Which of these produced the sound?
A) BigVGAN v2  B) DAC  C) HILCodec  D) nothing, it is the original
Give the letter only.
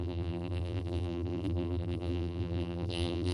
A